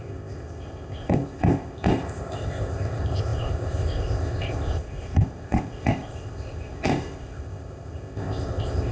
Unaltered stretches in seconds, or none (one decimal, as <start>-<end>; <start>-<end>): none